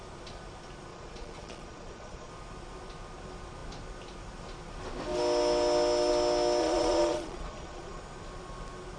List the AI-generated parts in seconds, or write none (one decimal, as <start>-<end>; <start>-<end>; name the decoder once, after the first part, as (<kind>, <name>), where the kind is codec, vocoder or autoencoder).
0.9-2.3 (vocoder, Vocos); 6.6-8.0